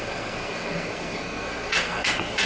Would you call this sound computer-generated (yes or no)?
yes